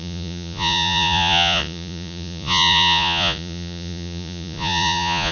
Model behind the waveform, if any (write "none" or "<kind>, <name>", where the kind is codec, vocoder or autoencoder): vocoder, Vocos